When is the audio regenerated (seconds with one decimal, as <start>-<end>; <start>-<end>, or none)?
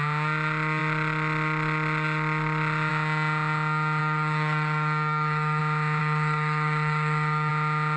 4.0-5.6; 6.0-7.5